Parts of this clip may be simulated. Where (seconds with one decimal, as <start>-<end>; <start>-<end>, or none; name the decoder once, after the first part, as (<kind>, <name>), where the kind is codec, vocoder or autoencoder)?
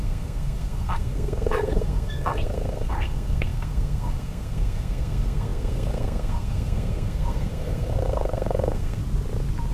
0.0-9.0 (codec, SNAC)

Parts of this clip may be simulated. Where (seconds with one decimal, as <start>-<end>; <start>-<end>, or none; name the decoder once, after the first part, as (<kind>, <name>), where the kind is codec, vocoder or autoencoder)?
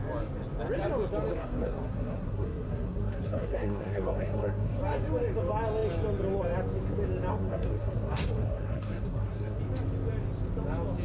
1.3-4.8 (codec, SNAC); 7.3-9.6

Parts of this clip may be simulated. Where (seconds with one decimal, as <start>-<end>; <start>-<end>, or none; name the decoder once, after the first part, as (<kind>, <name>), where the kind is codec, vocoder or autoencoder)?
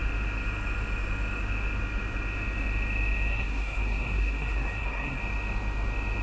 3.3-5.2 (codec, SNAC)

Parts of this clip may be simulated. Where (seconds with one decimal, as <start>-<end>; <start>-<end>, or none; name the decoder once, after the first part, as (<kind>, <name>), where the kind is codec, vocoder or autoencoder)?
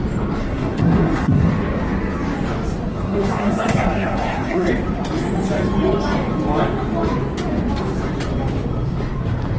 0.4-1.5 (codec, SNAC); 2.9-4.7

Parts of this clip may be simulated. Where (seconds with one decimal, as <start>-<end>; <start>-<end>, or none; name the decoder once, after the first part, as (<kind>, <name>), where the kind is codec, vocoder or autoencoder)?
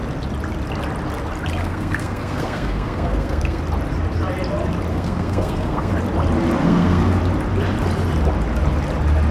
1.6-3.6 (codec, SNAC); 4.9-5.9; 6.6-7.2